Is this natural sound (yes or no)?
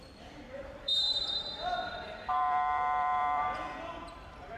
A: no